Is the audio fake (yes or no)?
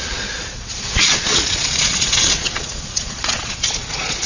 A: yes